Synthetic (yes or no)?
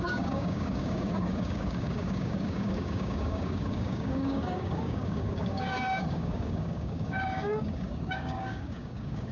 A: yes